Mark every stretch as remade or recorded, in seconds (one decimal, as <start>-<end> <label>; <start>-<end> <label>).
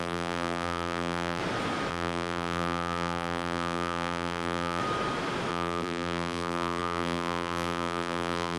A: 0.0-1.4 remade; 1.4-1.9 recorded; 1.9-4.8 remade; 4.8-5.5 recorded; 5.5-8.6 remade